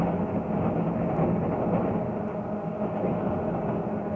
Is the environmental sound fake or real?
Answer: real